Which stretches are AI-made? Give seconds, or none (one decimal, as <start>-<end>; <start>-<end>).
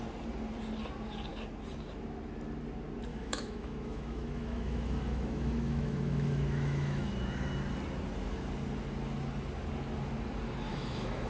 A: 3.1-7.1; 10.7-11.3